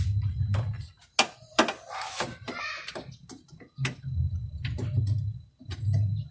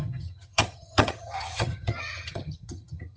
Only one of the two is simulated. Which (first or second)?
second